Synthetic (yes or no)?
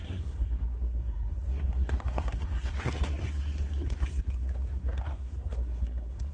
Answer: yes